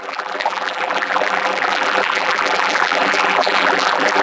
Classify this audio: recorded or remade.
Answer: remade